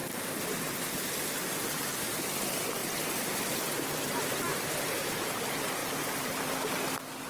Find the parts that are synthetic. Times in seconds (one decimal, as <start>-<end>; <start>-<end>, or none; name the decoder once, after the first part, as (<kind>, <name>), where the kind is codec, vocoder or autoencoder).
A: 0.0-0.8 (vocoder, BigVGAN v2); 2.8-3.6; 4.5-5.1